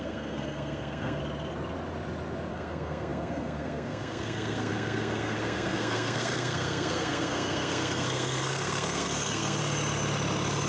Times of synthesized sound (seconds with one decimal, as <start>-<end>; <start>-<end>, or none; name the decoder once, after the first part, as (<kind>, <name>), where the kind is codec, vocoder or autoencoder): 0.0-1.2 (codec, SNAC); 2.5-9.6